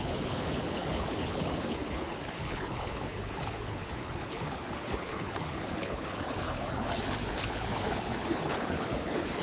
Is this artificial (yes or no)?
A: yes